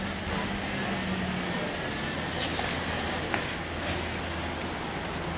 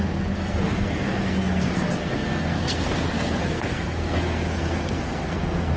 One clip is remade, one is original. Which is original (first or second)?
first